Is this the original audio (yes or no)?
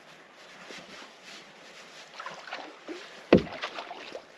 no